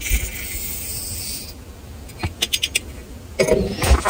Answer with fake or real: real